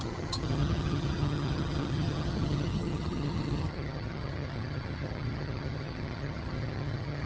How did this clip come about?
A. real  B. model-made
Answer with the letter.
B